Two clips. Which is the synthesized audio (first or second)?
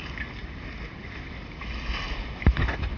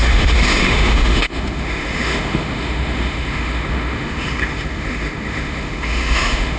second